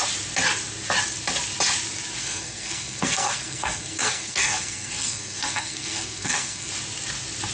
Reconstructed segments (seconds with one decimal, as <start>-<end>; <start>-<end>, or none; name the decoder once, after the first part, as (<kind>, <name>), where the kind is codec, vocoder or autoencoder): 2.2-6.7 (codec, SNAC)

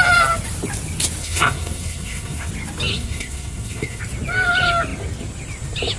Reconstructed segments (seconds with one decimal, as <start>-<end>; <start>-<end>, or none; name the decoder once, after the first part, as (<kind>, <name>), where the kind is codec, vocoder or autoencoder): 1.2-2.5 (codec, SNAC); 2.9-4.0